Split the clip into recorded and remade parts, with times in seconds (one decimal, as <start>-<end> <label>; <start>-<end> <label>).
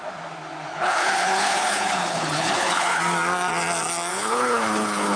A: 0.0-0.7 recorded; 0.7-3.0 remade; 3.0-4.1 recorded; 4.1-5.2 remade